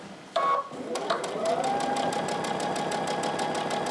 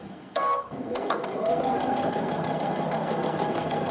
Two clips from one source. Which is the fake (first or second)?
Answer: second